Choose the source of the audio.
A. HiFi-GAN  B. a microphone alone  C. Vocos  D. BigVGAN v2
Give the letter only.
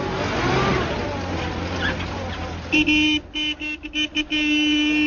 B